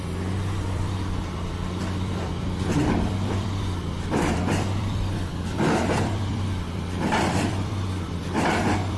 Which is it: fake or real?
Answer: fake